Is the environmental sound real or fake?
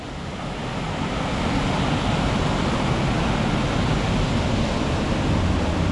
real